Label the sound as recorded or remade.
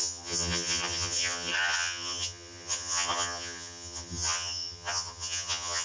remade